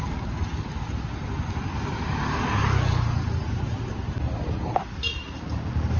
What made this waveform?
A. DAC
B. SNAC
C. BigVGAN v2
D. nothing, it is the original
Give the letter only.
D